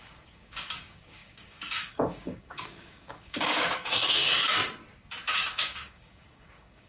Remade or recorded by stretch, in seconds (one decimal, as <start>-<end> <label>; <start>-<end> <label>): 0.0-4.6 remade; 4.6-5.3 recorded; 5.3-6.9 remade